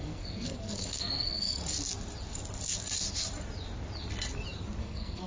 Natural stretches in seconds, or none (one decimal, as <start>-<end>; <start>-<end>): 1.6-4.8